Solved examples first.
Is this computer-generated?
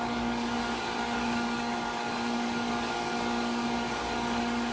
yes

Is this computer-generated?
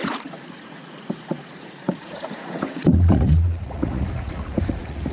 yes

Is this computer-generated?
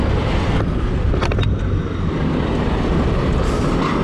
no